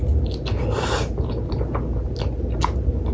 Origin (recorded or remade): recorded